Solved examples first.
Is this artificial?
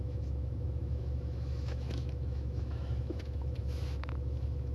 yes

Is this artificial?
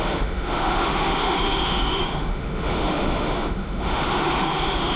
yes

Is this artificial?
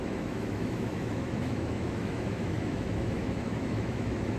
yes